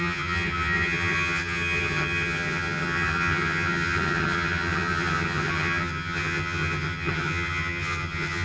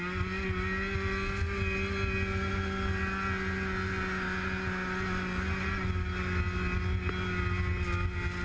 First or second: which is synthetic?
first